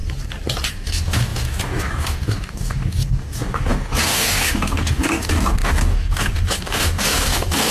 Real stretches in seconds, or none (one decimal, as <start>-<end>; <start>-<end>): 0.0-0.7